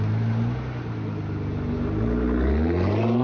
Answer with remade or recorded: recorded